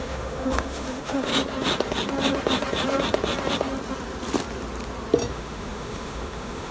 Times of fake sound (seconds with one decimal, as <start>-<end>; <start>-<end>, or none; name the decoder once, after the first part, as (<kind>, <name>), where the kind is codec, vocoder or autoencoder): 0.0-1.3 (autoencoder, DAC-VAE); 5.3-6.7